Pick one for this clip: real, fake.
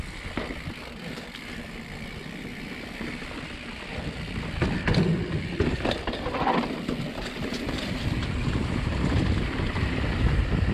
fake